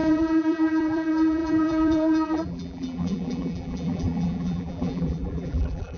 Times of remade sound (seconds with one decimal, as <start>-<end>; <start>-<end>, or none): 0.0-6.0